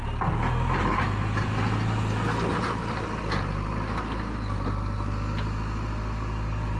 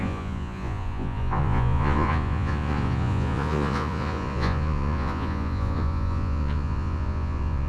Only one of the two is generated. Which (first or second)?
second